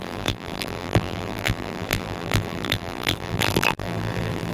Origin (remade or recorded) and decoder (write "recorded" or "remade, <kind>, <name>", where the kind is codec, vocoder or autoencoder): remade, vocoder, BigVGAN v2